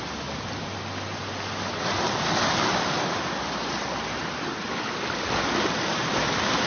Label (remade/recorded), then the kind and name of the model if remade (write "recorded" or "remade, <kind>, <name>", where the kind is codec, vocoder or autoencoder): recorded